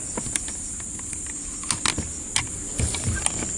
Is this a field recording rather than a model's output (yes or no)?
yes